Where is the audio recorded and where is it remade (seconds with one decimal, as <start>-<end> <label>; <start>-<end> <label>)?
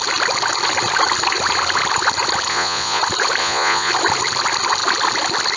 0.0-2.5 recorded; 2.5-3.0 remade; 3.0-3.4 recorded; 3.4-3.9 remade; 3.9-5.6 recorded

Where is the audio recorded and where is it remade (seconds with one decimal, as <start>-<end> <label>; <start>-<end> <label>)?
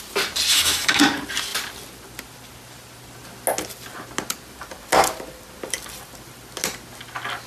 0.0-0.5 recorded; 0.5-1.0 remade; 1.0-7.5 recorded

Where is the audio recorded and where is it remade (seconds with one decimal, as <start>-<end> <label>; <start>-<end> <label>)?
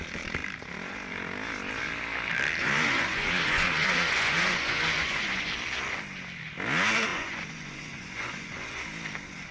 0.0-2.6 recorded; 2.6-5.5 remade; 5.5-7.1 recorded; 7.1-8.8 remade; 8.8-9.5 recorded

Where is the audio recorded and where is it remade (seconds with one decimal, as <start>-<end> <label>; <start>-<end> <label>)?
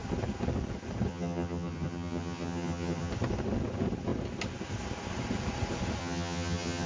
0.0-1.1 recorded; 1.1-3.1 remade; 3.1-6.0 recorded; 6.0-6.9 remade